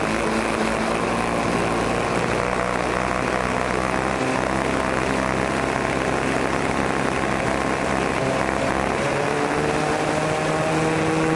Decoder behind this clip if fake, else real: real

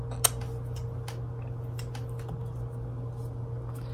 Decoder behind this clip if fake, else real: real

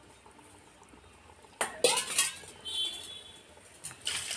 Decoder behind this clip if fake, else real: real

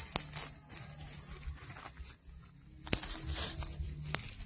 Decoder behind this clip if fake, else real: real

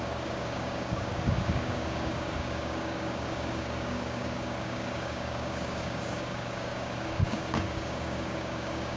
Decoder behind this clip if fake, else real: fake, codec, DAC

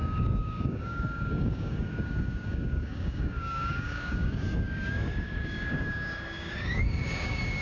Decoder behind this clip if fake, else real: fake, codec, DAC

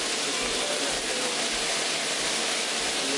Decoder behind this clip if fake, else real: real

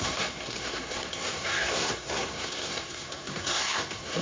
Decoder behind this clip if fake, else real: fake, codec, SNAC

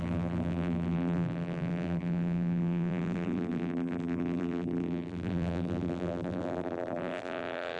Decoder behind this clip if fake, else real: fake, vocoder, BigVGAN v2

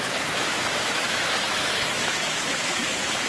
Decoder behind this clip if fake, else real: fake, autoencoder, DAC-VAE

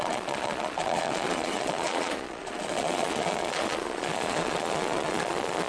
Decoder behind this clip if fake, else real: fake, vocoder, Vocos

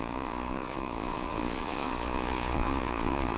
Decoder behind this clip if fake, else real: fake, vocoder, Vocos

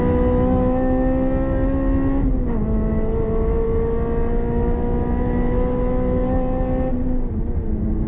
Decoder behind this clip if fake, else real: real